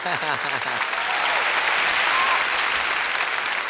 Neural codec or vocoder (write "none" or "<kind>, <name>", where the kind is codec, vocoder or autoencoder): none